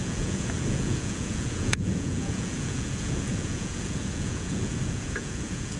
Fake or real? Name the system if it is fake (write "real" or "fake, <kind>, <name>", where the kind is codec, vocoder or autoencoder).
fake, vocoder, Vocos